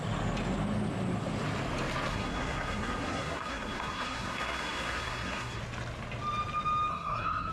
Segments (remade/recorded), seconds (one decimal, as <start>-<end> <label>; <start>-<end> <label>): 0.0-2.1 recorded; 2.1-5.6 remade; 5.6-6.9 recorded; 6.9-7.5 remade